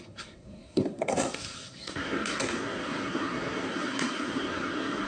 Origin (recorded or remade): remade